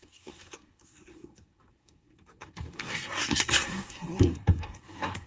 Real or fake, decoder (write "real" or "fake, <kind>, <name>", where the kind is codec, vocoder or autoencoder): fake, codec, SNAC